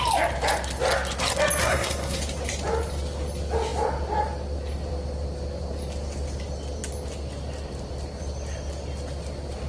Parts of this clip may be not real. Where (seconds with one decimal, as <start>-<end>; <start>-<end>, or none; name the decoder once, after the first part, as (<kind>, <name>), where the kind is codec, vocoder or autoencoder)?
1.6-2.2 (codec, SNAC)